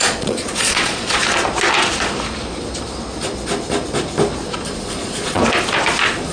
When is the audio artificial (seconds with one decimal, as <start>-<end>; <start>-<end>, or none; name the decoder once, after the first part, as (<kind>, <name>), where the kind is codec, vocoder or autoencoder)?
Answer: 0.0-1.2 (vocoder, Vocos); 5.0-5.4